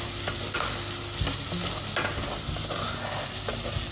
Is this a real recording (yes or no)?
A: yes